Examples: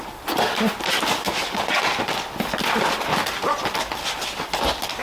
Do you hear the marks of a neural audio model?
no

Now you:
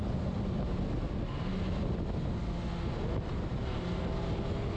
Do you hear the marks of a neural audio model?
no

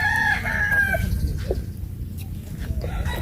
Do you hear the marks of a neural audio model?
no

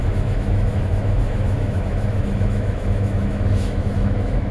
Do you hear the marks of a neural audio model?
yes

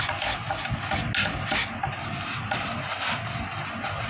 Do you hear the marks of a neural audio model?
no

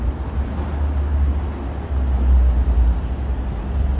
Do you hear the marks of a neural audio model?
no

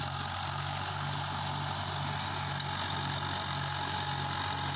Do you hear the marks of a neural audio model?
no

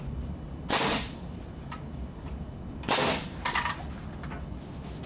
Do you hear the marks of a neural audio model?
no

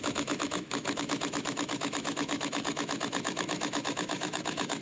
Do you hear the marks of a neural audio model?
yes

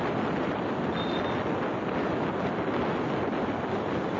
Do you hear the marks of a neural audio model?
no